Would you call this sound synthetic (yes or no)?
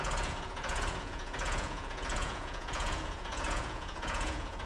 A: yes